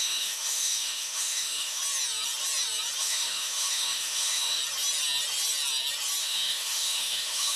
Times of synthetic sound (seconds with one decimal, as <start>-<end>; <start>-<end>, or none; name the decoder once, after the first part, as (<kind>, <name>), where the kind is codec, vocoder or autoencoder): 0.0-1.8 (autoencoder, DAC-VAE); 3.0-4.6; 6.2-7.6